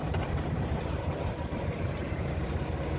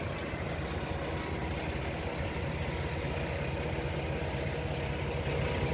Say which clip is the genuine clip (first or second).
second